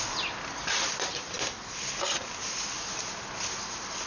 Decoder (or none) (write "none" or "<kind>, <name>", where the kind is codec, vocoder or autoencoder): none